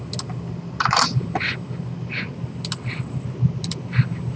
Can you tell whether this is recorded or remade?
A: recorded